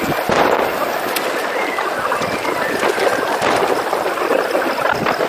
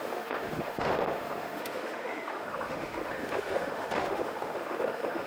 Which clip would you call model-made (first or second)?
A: second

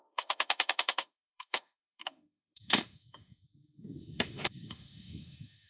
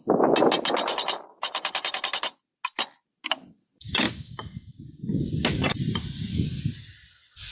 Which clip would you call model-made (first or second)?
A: first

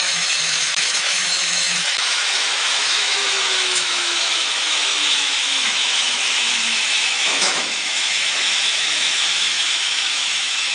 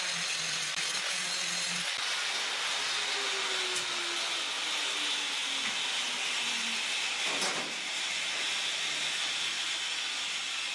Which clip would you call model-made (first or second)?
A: first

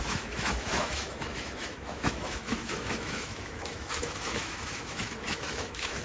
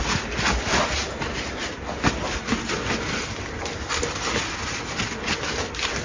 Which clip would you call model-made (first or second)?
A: first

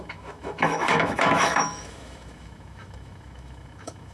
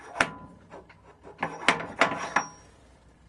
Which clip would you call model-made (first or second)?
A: first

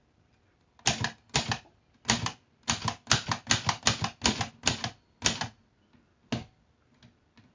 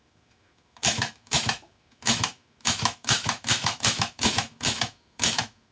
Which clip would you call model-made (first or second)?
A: second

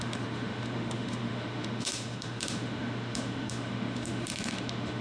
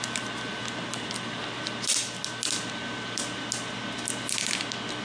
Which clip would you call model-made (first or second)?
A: first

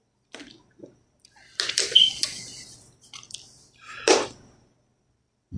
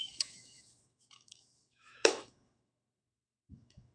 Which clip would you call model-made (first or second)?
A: second